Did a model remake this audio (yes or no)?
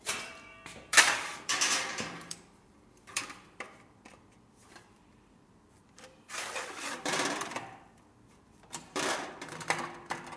yes